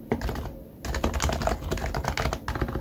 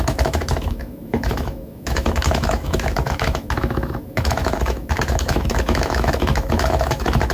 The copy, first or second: second